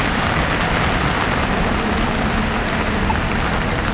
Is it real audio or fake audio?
real